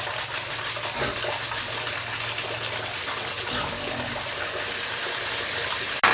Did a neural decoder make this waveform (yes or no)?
no